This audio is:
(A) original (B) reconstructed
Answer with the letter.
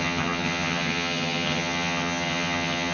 B